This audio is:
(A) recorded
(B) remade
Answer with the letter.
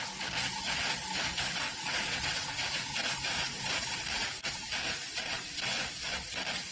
A